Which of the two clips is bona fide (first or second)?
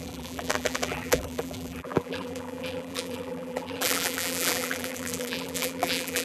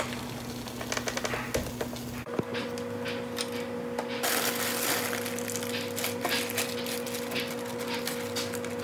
second